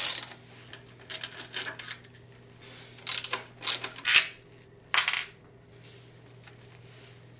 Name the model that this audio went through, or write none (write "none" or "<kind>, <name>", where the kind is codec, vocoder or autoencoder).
none